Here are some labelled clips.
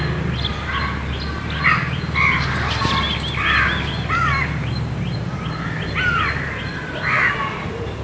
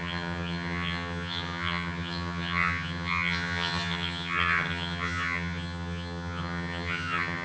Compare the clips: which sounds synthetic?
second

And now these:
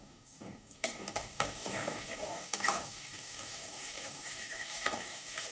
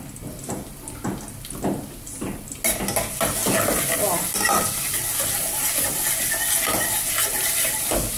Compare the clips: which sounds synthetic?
first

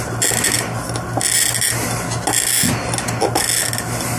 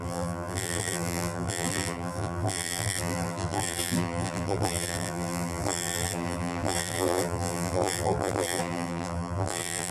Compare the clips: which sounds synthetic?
second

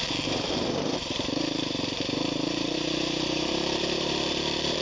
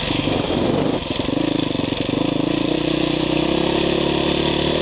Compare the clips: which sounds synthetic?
first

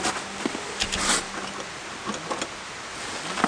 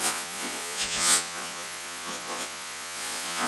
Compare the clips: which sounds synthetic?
second